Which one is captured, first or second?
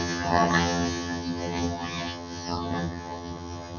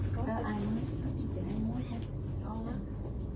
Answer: second